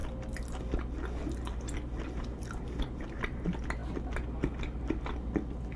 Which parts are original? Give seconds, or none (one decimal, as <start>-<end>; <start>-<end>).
0.0-5.8